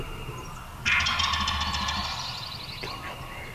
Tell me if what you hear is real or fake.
real